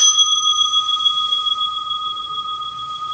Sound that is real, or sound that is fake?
fake